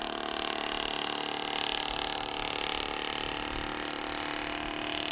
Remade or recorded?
recorded